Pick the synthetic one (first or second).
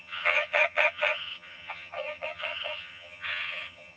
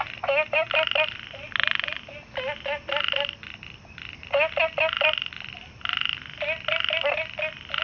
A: first